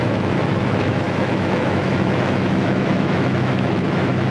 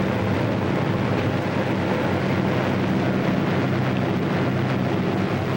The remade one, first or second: first